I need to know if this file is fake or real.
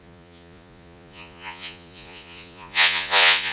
fake